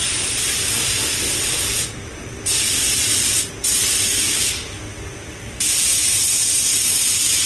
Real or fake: real